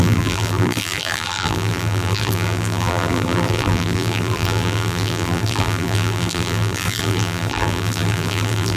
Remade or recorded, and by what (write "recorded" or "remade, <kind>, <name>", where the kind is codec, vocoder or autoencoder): remade, vocoder, BigVGAN v2